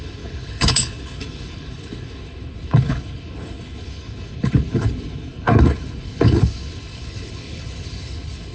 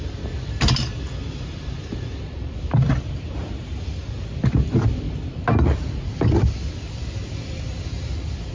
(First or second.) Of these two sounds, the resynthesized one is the first